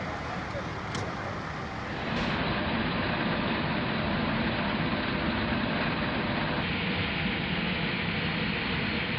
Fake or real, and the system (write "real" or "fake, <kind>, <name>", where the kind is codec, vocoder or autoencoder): real